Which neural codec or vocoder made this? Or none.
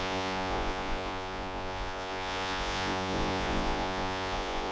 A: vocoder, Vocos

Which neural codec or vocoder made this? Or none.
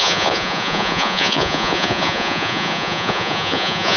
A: vocoder, Vocos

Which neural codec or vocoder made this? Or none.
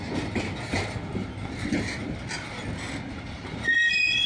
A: none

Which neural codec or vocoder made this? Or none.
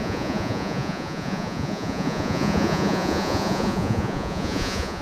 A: vocoder, Vocos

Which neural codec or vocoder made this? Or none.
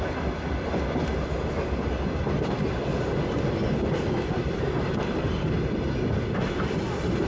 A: none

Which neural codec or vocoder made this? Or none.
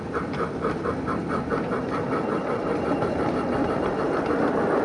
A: none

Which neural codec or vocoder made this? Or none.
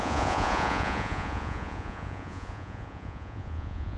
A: vocoder, Vocos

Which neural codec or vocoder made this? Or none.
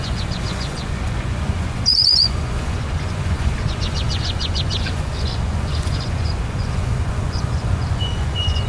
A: vocoder, Vocos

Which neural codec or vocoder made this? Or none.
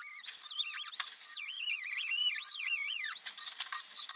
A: none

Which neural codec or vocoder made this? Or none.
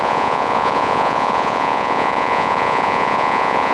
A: vocoder, Vocos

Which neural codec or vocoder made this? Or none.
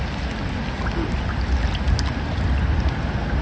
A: none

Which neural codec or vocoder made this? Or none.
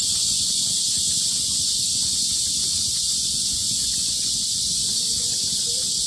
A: vocoder, Vocos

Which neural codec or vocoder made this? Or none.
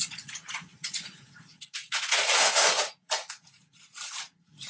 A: vocoder, Vocos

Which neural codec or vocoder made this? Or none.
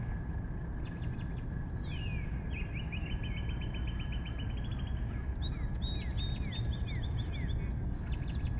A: none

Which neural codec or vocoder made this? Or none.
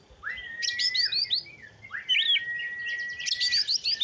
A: none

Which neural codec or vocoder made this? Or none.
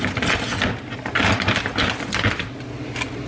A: none